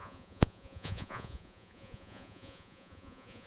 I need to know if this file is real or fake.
fake